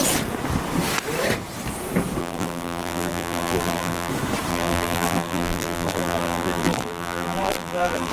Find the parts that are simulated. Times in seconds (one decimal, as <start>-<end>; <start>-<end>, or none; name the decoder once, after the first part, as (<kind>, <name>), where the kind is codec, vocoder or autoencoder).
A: 2.2-4.1 (vocoder, BigVGAN v2); 4.5-8.1